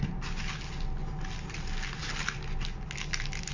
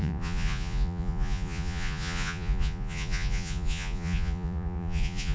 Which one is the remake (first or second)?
second